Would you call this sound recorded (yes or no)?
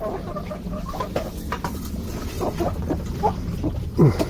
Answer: yes